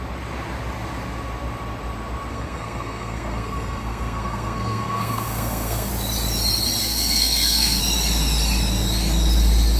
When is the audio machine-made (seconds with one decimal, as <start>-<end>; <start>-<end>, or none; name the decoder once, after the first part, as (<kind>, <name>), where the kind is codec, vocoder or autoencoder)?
2.3-5.9 (codec, SNAC); 6.8-7.8